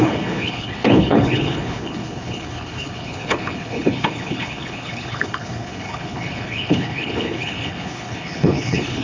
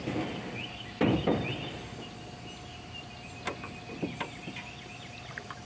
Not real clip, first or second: first